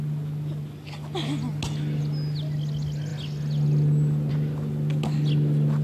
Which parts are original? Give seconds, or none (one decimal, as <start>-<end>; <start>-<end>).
0.0-5.8